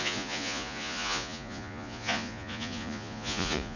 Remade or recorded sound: remade